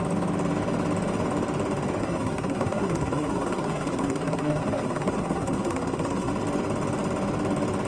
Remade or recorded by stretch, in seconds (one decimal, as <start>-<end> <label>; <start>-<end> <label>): 0.0-2.0 recorded; 2.0-6.3 remade; 6.3-7.9 recorded